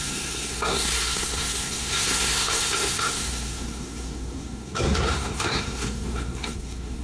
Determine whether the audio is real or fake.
fake